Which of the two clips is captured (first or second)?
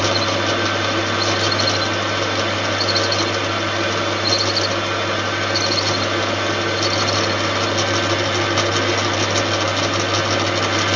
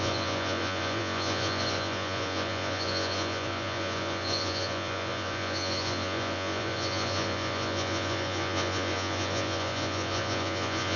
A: first